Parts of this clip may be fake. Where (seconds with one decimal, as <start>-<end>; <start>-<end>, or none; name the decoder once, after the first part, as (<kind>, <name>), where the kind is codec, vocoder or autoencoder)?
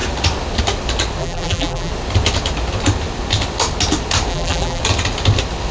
1.2-1.9 (vocoder, BigVGAN v2); 4.3-4.8